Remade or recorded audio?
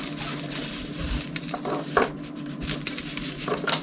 recorded